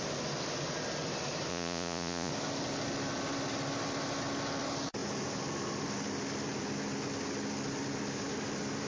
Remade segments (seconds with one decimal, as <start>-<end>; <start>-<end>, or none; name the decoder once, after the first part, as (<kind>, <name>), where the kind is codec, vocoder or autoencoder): 1.5-2.3 (vocoder, Vocos)